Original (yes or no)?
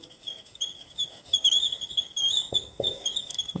no